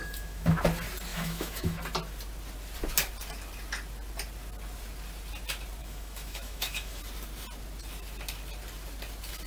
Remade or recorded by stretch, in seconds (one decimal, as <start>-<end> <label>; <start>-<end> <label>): 0.0-0.6 remade; 0.6-1.1 recorded; 1.1-1.8 remade; 1.8-5.8 recorded; 5.8-7.0 remade; 7.0-9.5 recorded